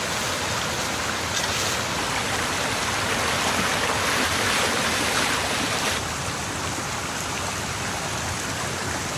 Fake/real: real